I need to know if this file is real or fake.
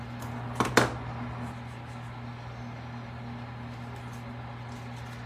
real